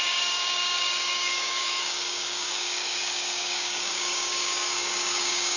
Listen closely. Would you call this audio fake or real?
fake